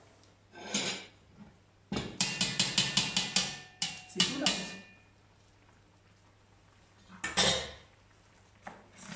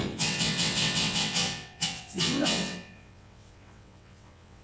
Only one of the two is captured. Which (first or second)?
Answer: first